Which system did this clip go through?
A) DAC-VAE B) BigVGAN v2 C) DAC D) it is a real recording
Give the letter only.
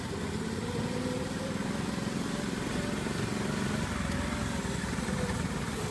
B